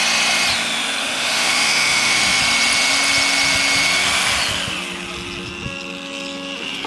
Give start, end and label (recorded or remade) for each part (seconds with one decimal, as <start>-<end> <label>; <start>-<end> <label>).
0.0-1.0 recorded; 1.0-2.4 remade; 2.4-6.9 recorded